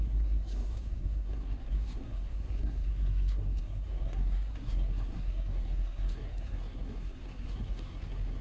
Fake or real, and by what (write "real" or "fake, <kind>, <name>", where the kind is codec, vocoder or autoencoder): fake, codec, SNAC